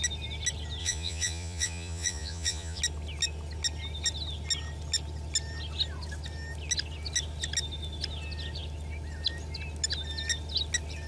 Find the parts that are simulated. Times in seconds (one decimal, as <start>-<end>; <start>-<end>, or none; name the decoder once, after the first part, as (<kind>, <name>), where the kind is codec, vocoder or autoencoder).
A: 0.8-2.8 (vocoder, Vocos)